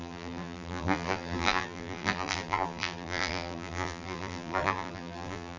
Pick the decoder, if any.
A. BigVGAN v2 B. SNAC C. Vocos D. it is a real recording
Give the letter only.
A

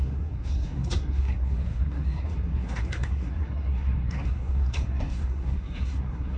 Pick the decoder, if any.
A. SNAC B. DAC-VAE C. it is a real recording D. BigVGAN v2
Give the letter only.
A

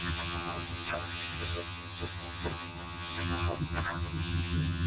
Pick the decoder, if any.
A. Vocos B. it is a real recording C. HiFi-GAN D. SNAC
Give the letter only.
C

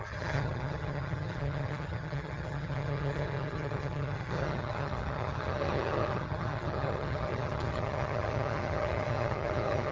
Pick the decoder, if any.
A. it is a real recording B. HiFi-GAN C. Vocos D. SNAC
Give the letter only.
B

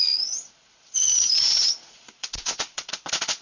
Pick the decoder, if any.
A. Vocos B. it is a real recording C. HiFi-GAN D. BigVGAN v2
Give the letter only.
A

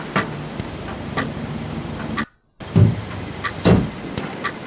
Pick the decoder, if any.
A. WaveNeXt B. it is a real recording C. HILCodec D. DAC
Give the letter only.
B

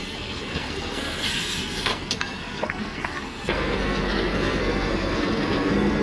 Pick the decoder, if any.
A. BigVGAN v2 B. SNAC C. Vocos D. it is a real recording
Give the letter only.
B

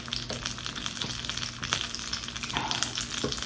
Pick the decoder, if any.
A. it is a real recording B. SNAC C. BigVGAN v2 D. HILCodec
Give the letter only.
A